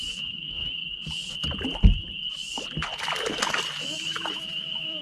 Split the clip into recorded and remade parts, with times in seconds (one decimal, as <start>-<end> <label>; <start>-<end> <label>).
0.0-0.8 remade; 0.8-3.8 recorded; 3.8-5.0 remade